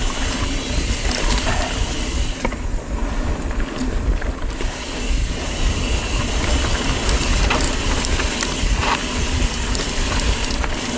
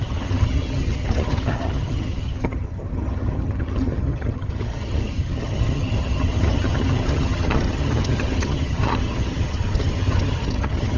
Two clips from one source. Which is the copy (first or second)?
second